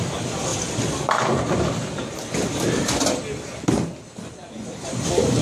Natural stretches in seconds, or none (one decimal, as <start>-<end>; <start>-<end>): 0.0-5.4